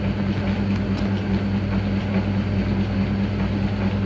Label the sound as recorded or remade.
recorded